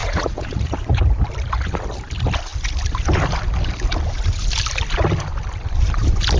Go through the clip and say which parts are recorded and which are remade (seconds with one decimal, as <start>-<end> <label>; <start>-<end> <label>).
0.0-1.0 remade; 1.0-6.4 recorded